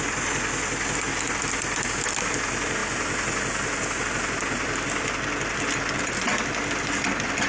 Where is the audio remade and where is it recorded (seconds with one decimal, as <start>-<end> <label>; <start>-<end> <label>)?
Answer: 0.0-7.5 recorded